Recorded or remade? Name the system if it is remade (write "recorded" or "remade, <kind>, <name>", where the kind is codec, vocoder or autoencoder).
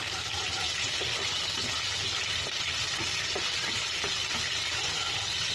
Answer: recorded